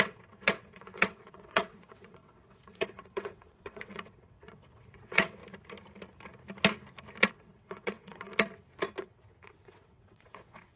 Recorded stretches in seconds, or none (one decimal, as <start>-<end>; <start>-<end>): 5.4-7.3; 8.3-9.0